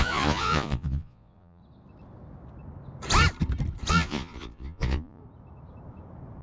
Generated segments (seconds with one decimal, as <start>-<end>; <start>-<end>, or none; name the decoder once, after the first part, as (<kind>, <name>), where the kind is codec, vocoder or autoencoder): 0.0-1.6 (vocoder, Vocos); 3.9-5.2